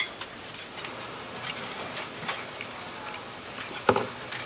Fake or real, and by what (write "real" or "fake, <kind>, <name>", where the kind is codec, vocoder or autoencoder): real